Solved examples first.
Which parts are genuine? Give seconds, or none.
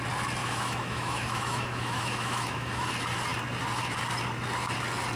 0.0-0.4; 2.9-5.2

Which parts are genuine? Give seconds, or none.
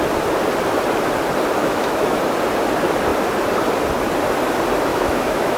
0.0-1.6; 2.2-4.9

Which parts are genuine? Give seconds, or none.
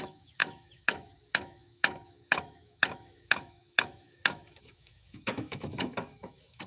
none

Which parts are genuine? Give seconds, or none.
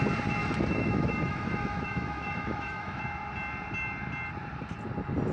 0.0-0.4; 3.0-5.3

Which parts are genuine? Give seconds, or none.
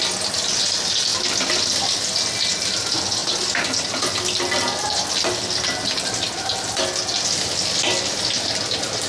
0.0-9.1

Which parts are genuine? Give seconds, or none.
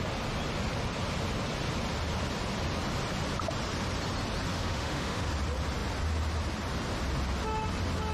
0.0-4.5; 5.3-8.1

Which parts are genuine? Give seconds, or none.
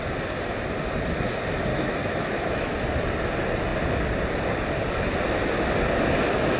0.0-1.7; 2.7-6.6